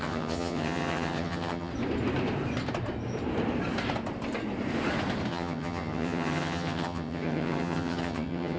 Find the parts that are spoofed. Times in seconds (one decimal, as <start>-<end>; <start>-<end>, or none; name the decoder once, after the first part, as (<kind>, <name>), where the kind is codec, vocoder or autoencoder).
0.0-1.7 (vocoder, HiFi-GAN); 5.3-8.6